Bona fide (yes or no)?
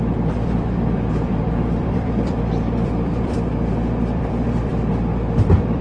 no